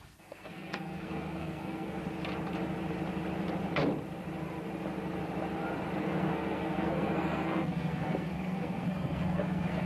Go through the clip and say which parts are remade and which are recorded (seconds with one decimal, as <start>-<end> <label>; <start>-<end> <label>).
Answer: 0.0-2.0 remade; 2.0-6.0 recorded; 6.0-9.9 remade